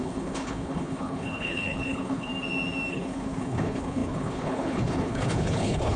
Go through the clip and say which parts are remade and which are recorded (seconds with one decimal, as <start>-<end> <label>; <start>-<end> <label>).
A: 0.0-2.3 remade; 2.3-2.9 recorded; 2.9-6.0 remade